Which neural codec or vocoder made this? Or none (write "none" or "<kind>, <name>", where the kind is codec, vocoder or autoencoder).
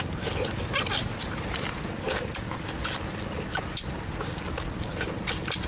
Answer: none